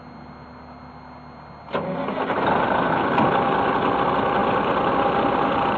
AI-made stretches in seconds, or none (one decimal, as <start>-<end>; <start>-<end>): none

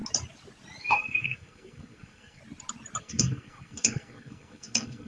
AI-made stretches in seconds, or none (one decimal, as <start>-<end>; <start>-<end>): 0.8-2.4; 3.0-5.1

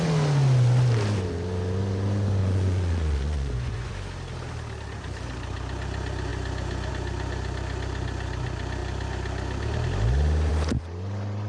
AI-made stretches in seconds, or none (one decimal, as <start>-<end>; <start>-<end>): 2.4-3.9

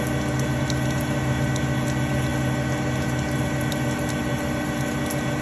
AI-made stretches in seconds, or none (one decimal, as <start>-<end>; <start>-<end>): none

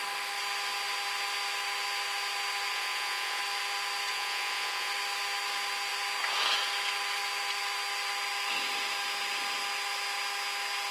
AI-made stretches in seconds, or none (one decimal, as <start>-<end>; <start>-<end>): 2.7-3.4; 4.1-4.9

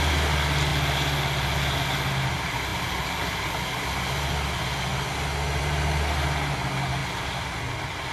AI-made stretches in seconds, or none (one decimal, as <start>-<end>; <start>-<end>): none